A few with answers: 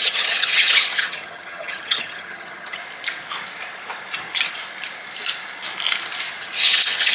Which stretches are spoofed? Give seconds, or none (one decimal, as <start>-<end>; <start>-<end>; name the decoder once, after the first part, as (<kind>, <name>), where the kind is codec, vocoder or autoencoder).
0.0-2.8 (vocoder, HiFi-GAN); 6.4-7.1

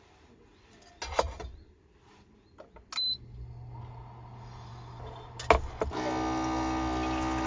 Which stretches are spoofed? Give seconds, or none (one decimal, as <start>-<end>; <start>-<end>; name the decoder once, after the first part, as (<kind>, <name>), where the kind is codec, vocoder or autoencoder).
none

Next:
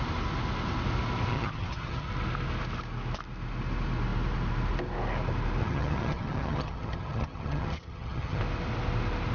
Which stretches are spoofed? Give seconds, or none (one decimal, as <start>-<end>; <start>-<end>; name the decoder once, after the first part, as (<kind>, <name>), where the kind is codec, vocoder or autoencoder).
1.3-2.1 (vocoder, HiFi-GAN); 5.6-8.4

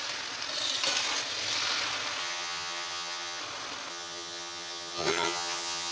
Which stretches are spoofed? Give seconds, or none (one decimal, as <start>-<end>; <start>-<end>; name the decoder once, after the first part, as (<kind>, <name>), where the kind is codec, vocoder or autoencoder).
2.2-3.4 (vocoder, HiFi-GAN); 3.9-5.9